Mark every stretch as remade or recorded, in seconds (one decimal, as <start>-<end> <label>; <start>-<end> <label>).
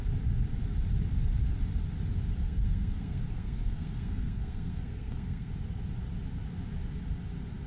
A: 0.0-2.4 recorded; 2.4-5.5 remade; 5.5-7.7 recorded